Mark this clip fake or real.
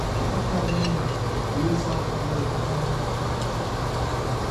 real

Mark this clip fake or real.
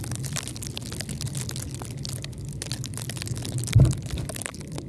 real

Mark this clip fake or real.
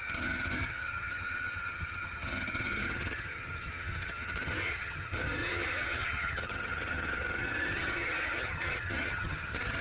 fake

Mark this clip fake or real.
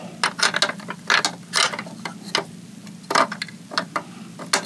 real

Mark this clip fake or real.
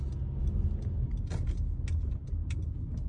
real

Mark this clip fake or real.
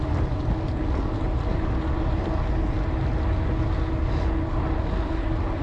real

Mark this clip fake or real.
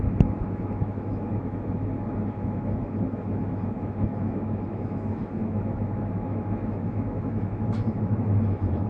fake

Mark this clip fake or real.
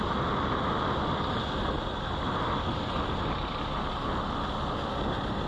real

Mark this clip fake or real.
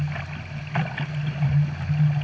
real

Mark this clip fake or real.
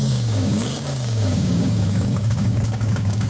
fake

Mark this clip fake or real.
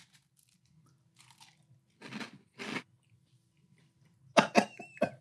real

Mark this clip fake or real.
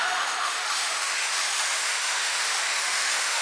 fake